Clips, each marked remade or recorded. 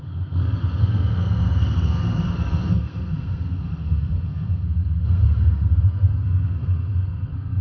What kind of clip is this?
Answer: remade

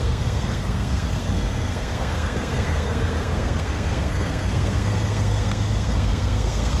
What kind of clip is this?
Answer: remade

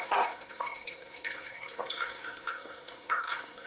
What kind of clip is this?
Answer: remade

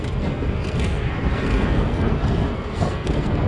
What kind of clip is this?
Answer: remade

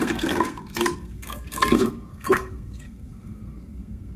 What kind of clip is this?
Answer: remade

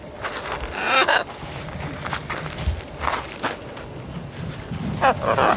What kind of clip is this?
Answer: recorded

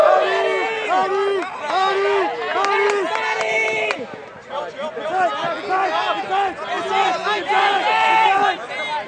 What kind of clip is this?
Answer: recorded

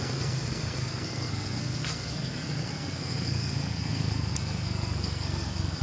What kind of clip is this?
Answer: remade